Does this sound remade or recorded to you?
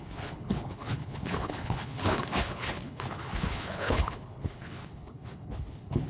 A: remade